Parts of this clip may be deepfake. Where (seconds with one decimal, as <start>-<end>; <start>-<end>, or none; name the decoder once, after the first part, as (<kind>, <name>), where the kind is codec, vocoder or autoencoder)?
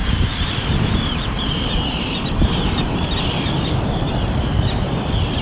0.0-2.8 (vocoder, BigVGAN v2)